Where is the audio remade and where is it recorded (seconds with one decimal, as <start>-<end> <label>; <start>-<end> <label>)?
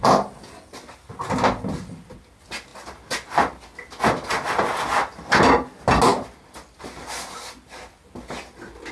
0.0-8.9 recorded